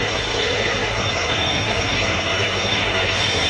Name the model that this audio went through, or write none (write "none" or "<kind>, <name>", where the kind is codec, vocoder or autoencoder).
codec, SNAC